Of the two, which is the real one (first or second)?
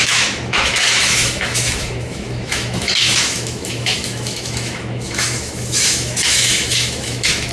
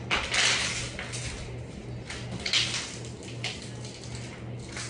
second